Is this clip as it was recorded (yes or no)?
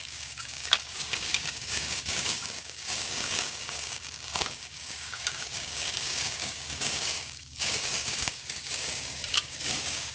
no